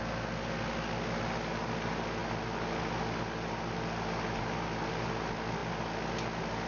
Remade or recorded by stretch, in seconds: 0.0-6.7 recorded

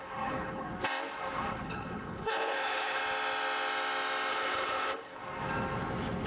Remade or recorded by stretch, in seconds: 0.0-0.7 remade; 0.7-1.5 recorded; 1.5-3.0 remade; 3.0-4.3 recorded; 4.3-5.2 remade; 5.2-6.3 recorded

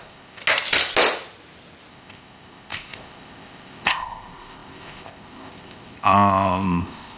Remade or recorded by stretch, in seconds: 0.0-0.4 remade; 0.4-1.9 recorded; 1.9-7.2 remade

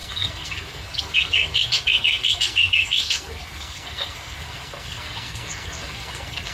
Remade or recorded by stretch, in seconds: 0.0-6.5 remade

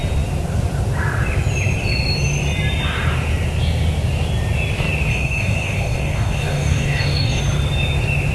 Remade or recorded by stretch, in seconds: 0.0-5.1 recorded; 5.1-7.4 remade; 7.4-8.3 recorded

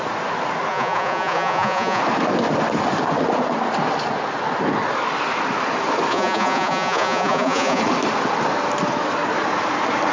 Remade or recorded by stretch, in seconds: 0.0-0.7 recorded; 0.7-2.0 remade; 2.0-6.1 recorded; 6.1-7.8 remade; 7.8-10.1 recorded

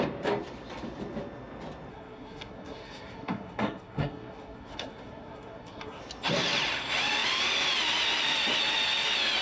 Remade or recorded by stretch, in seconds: 0.0-1.9 recorded; 1.9-6.0 remade; 6.0-9.4 recorded